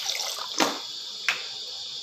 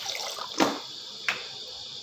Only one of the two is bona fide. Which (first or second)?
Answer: first